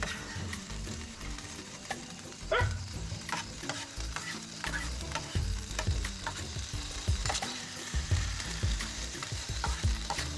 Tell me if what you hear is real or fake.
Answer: fake